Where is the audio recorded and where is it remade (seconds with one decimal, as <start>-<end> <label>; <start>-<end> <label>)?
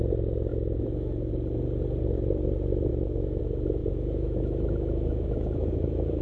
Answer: 0.0-0.5 recorded; 0.5-1.3 remade; 1.3-2.9 recorded; 2.9-3.4 remade; 3.4-3.8 recorded; 3.8-6.2 remade